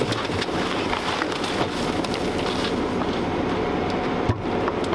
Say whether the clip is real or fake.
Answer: real